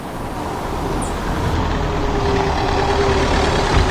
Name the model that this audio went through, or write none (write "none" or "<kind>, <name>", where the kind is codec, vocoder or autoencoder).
none